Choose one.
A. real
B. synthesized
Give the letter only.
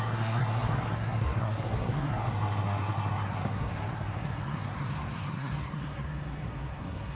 B